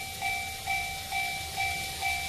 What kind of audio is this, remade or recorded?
recorded